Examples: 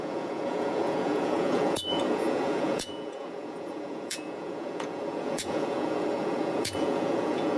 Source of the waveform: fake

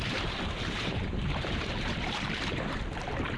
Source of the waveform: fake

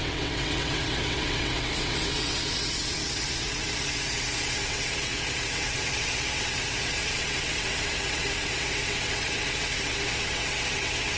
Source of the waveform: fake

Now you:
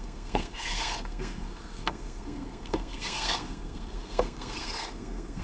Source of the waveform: fake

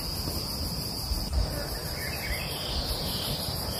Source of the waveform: real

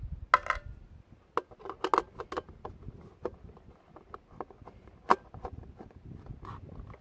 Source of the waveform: real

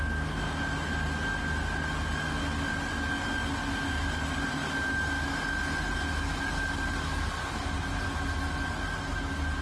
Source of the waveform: real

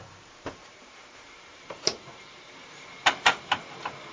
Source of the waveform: fake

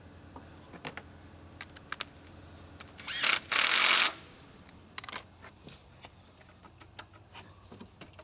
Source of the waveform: real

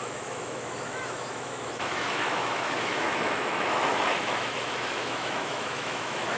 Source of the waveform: fake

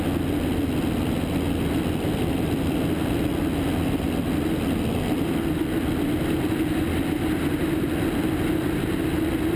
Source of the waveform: real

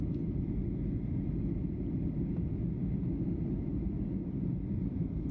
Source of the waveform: fake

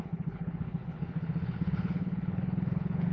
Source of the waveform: fake